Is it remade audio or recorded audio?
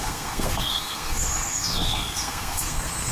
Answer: remade